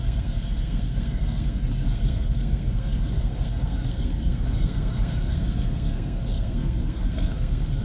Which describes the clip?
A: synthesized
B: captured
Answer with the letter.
A